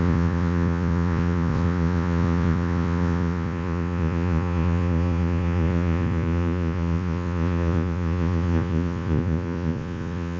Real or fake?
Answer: fake